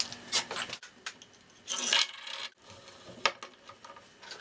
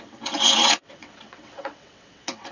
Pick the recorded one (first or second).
first